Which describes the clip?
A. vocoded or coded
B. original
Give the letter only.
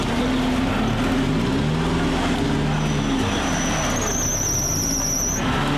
B